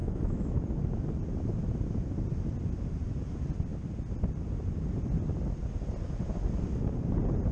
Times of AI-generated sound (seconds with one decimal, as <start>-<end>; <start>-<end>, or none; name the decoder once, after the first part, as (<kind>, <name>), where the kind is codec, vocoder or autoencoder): 0.0-0.6 (autoencoder, DAC-VAE)